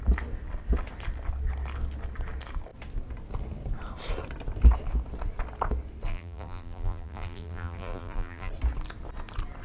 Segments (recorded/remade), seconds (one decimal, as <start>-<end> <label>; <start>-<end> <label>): 0.0-6.1 recorded; 6.1-8.5 remade; 8.5-9.6 recorded